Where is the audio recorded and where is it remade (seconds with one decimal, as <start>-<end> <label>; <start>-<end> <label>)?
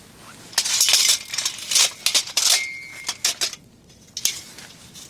0.0-5.1 recorded